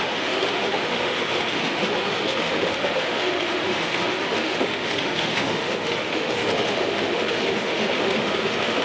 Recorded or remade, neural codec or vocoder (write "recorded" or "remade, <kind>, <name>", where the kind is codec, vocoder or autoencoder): remade, autoencoder, DAC-VAE